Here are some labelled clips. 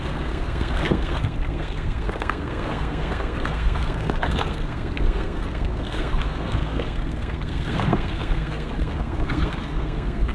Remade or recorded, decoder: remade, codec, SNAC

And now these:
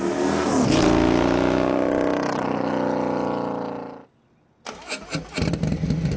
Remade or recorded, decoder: recorded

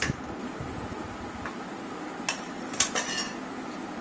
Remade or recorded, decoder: recorded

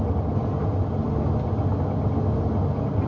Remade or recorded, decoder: recorded